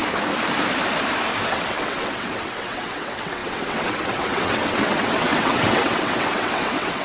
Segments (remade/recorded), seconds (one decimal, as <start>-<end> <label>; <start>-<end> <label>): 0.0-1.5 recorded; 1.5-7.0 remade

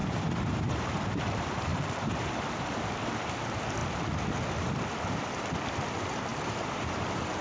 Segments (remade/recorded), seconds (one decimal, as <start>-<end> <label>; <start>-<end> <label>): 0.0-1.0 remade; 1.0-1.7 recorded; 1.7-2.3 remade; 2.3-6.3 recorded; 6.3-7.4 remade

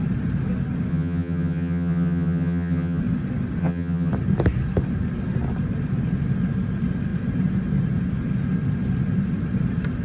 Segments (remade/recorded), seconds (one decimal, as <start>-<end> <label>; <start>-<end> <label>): 0.0-0.9 recorded; 0.9-3.0 remade; 3.0-3.6 recorded; 3.6-4.1 remade; 4.1-10.0 recorded

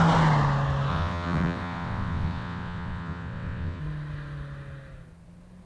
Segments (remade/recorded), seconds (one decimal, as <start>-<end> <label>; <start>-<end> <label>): 0.0-0.9 recorded; 0.9-3.8 remade; 3.8-5.7 recorded